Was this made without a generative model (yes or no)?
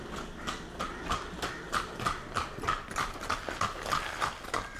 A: yes